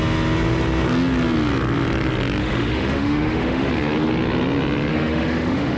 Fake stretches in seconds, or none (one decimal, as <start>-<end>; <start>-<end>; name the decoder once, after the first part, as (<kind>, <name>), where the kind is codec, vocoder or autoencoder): 2.4-3.7 (autoencoder, DAC-VAE); 4.9-5.8